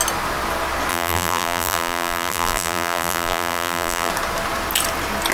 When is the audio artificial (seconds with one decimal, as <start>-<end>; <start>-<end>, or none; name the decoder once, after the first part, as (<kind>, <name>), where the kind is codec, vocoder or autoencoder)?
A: 0.9-4.1 (vocoder, BigVGAN v2)